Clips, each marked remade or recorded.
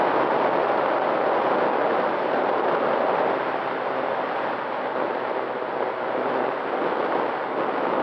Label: recorded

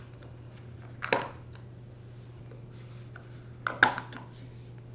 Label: recorded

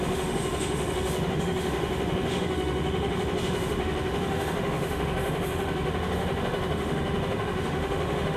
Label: remade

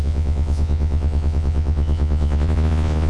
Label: remade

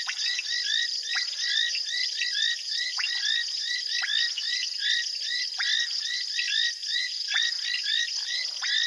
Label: recorded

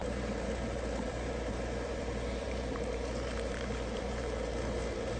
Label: remade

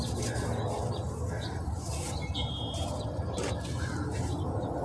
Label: recorded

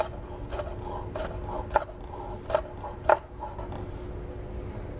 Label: recorded